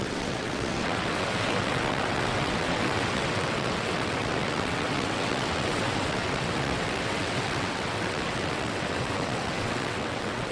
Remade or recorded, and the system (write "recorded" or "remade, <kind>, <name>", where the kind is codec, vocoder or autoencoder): remade, vocoder, WaveNeXt